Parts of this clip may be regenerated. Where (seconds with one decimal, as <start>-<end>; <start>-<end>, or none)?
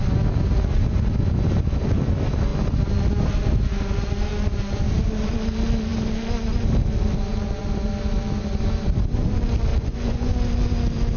9.7-10.3